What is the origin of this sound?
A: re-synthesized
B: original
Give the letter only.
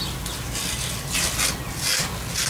B